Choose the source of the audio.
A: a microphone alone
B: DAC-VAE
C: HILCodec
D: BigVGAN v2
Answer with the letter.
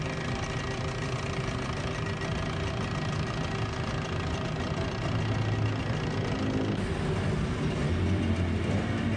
A